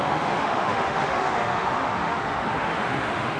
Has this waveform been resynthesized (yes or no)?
yes